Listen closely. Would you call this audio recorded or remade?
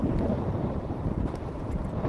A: remade